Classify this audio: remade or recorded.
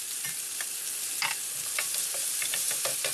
recorded